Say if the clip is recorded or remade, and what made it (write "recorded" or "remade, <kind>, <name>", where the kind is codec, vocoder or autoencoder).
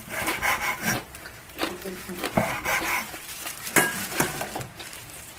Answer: remade, vocoder, BigVGAN v2